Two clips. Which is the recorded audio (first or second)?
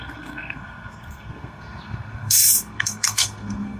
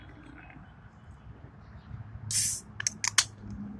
second